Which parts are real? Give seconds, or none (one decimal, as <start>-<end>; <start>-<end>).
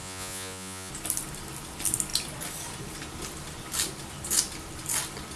0.9-5.4